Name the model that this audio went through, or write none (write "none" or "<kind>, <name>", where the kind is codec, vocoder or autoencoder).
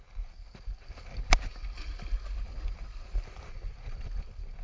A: none